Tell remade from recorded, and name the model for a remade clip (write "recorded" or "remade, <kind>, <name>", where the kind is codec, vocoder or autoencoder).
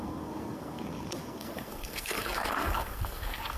remade, codec, SNAC